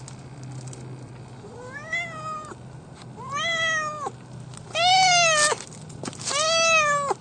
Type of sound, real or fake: real